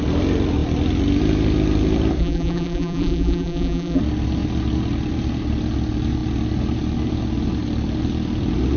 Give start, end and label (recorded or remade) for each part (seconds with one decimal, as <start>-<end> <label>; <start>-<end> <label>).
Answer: 0.0-2.2 recorded; 2.2-4.0 remade; 4.0-8.8 recorded